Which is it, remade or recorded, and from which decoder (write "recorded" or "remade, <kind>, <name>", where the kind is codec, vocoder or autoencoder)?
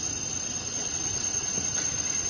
recorded